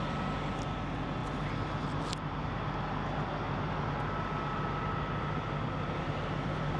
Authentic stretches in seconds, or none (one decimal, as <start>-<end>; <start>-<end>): 0.0-6.8